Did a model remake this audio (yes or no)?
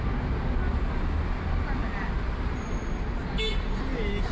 no